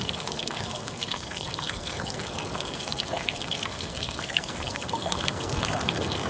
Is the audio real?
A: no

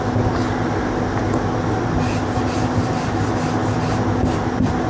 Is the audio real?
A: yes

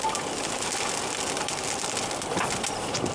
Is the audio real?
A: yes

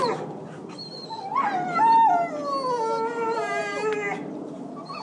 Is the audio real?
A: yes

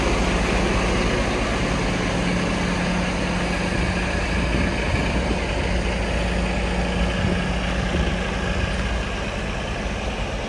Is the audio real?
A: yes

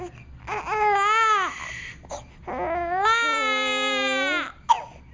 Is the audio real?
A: yes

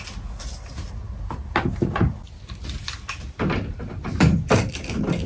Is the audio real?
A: yes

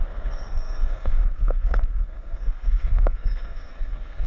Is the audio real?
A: no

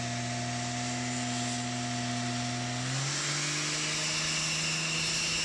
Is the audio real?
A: yes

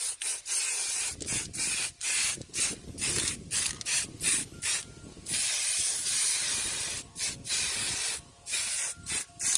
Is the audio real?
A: yes